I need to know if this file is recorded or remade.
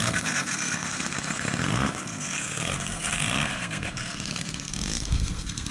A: remade